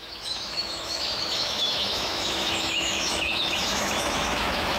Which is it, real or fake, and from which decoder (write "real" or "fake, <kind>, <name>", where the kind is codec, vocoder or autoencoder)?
fake, autoencoder, DAC-VAE